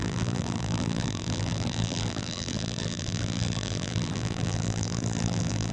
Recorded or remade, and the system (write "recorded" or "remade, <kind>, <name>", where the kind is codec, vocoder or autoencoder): remade, vocoder, BigVGAN v2